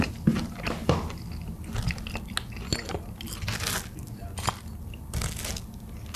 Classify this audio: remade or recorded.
recorded